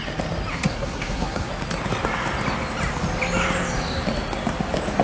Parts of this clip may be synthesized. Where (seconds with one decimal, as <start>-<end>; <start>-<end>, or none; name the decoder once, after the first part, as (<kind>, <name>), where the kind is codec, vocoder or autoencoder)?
0.5-1.5 (codec, SNAC)